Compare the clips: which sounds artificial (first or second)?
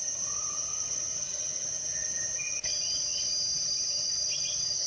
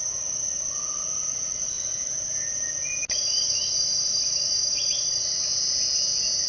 first